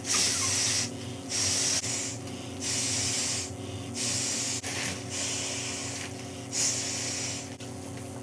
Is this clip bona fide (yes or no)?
yes